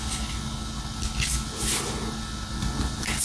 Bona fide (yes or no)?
yes